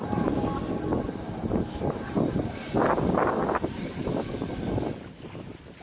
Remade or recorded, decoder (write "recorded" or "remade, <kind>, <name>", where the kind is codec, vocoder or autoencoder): recorded